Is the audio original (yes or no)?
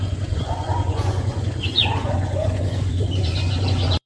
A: no